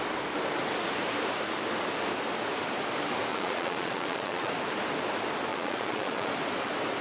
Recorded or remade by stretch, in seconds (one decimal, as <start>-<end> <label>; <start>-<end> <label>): 0.0-3.3 recorded; 3.3-4.5 remade; 4.5-5.5 recorded; 5.5-6.3 remade; 6.3-7.0 recorded